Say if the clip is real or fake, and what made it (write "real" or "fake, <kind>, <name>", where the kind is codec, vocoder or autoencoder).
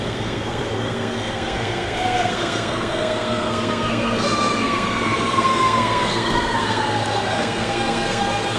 fake, codec, SNAC